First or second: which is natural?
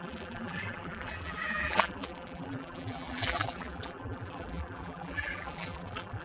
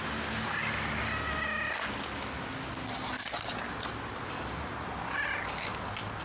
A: second